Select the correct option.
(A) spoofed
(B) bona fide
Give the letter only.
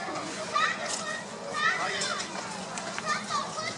A